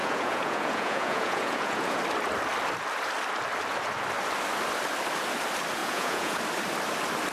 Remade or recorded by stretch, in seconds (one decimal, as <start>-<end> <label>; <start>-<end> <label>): 0.0-2.0 remade; 2.0-5.8 recorded; 5.8-6.4 remade; 6.4-7.3 recorded